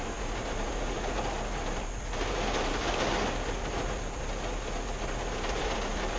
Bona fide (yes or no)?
yes